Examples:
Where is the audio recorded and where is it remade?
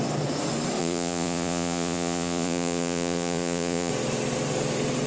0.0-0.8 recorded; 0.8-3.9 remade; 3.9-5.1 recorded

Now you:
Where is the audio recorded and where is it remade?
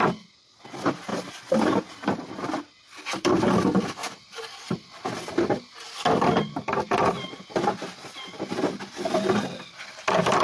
0.0-10.4 recorded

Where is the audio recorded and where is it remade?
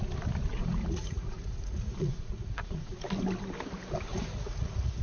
0.0-0.5 recorded; 0.5-2.9 remade; 2.9-4.1 recorded; 4.1-5.0 remade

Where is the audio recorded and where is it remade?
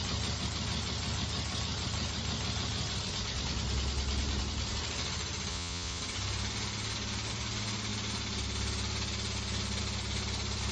0.0-5.5 recorded; 5.5-6.0 remade; 6.0-10.7 recorded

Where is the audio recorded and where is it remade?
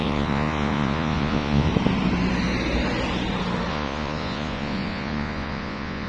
0.0-1.7 remade; 1.7-3.7 recorded; 3.7-6.1 remade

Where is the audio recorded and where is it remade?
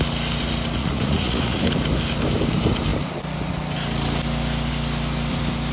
0.0-0.8 recorded; 0.8-1.6 remade; 1.6-5.7 recorded